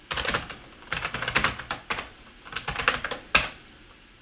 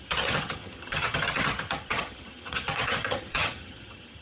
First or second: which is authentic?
first